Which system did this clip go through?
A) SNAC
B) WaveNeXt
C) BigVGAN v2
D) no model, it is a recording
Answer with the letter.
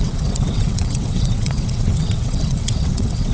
B